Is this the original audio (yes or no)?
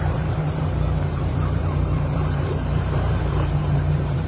no